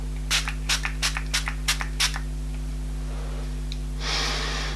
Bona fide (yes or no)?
yes